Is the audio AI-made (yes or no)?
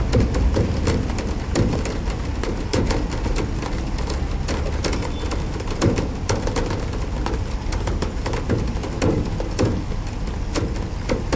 no